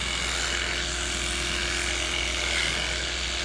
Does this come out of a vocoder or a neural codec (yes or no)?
no